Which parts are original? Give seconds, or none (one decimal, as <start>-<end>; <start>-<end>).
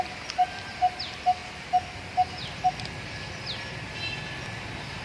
0.0-5.0